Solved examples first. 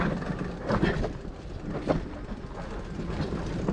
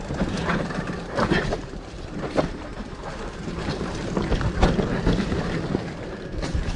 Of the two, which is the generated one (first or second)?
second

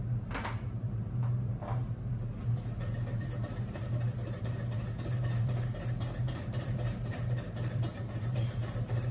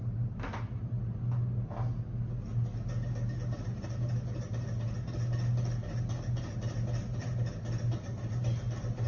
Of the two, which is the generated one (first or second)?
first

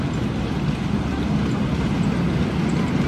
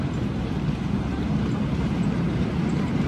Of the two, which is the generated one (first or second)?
second